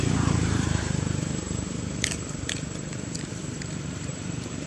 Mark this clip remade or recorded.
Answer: remade